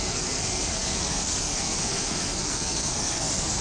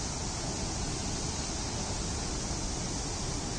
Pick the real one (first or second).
second